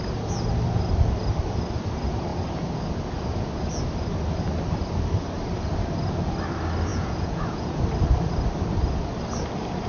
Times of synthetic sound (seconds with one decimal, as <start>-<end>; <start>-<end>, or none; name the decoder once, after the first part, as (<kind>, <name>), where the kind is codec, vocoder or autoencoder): 6.9-7.8 (vocoder, Vocos)

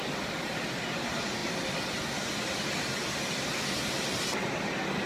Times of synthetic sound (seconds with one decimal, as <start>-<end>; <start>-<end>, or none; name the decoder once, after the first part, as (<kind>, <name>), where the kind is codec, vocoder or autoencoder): none